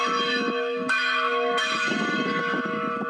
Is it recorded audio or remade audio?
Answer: remade